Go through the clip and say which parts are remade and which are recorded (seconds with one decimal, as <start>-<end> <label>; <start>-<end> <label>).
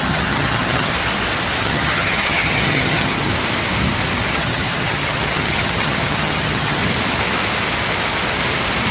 0.0-0.9 remade; 0.9-1.6 recorded; 1.6-3.3 remade; 3.3-4.3 recorded; 4.3-6.8 remade; 6.8-8.9 recorded